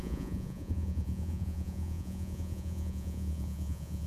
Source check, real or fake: fake